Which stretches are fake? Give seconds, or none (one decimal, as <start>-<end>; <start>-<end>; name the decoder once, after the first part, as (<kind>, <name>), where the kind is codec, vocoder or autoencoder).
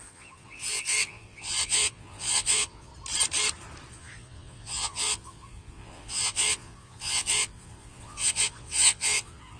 0.0-2.9 (vocoder, Vocos); 3.9-9.6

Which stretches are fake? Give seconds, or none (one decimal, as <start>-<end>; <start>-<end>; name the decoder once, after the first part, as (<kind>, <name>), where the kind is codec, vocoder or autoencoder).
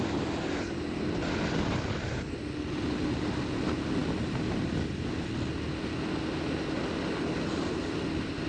none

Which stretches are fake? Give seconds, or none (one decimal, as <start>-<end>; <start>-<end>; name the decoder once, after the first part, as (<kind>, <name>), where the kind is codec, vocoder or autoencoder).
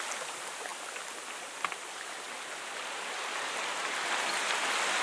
none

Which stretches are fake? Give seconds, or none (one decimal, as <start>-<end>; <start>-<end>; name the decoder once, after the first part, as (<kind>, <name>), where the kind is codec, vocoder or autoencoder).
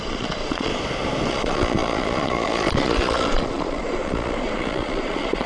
0.0-0.7 (vocoder, Vocos); 1.3-5.5